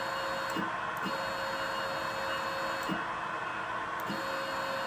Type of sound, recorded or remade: recorded